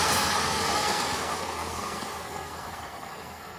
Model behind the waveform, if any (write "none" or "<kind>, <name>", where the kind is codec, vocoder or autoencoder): codec, SNAC